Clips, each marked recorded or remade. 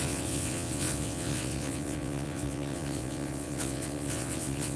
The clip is remade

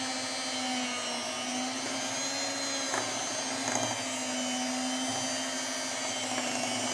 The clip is recorded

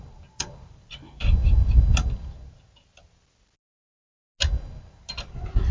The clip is recorded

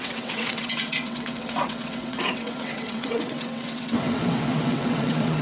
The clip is remade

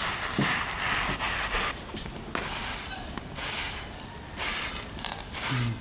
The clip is recorded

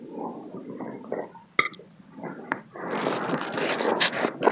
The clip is recorded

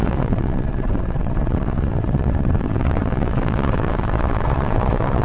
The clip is remade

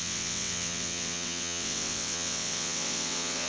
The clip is remade